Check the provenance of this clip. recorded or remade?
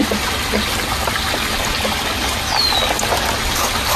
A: recorded